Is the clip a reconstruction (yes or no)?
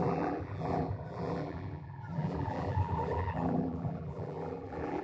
yes